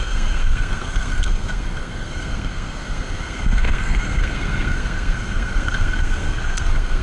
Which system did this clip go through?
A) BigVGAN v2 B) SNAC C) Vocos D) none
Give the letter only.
B